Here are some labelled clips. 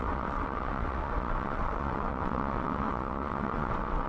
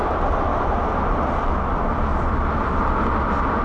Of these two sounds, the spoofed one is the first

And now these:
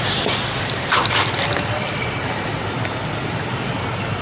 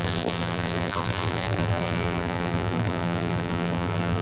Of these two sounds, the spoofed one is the second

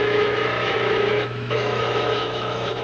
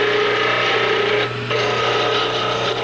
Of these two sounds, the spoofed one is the first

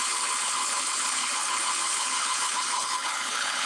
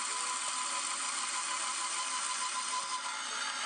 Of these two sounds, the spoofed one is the first